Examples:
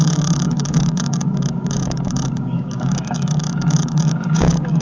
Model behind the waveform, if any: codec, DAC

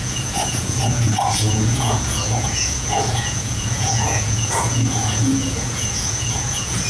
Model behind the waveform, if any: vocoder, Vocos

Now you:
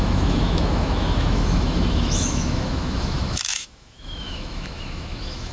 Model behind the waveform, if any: autoencoder, DAC-VAE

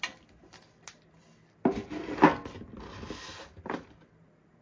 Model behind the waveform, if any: none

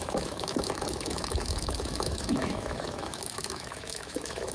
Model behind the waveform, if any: autoencoder, DAC-VAE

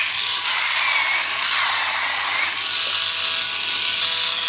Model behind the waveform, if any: none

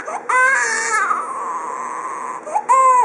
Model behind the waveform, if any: none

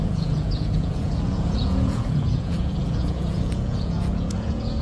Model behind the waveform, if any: vocoder, Vocos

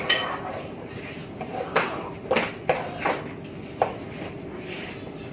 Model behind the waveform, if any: none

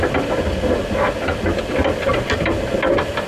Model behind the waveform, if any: none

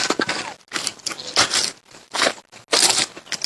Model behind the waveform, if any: none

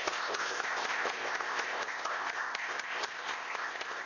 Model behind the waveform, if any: codec, ZipCodec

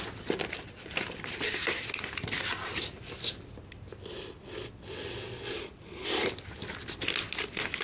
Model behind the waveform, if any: none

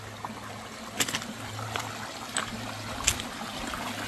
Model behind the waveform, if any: none